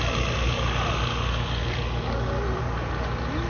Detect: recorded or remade recorded